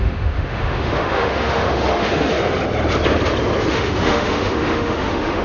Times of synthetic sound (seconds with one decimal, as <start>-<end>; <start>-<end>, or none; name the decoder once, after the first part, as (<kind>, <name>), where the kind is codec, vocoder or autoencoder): 0.0-2.3 (autoencoder, DAC-VAE); 3.7-5.4

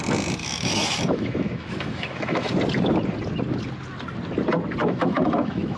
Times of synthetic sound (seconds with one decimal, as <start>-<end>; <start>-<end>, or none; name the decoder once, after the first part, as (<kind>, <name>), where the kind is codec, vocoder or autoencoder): 0.4-2.5 (autoencoder, DAC-VAE); 4.8-5.8

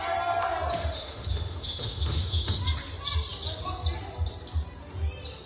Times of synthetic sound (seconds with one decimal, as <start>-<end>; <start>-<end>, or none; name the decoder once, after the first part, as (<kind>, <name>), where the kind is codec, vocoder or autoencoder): 0.8-2.6 (autoencoder, DAC-VAE)